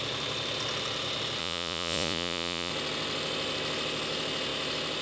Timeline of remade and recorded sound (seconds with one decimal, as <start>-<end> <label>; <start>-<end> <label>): 0.0-1.4 recorded; 1.4-2.7 remade; 2.7-5.0 recorded